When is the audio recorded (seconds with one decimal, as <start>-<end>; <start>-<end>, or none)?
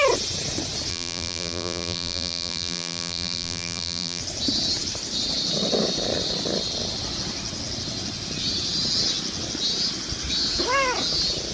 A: 0.0-0.9; 4.2-11.5